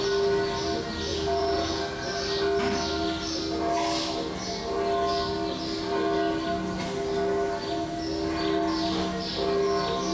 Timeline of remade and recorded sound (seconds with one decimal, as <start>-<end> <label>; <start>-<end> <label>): 0.0-1.1 recorded; 1.1-1.8 remade; 1.8-10.1 recorded